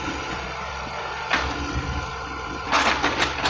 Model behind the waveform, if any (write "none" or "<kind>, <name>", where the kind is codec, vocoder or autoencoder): none